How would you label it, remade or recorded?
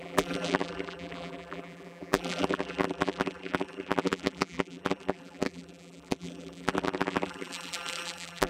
remade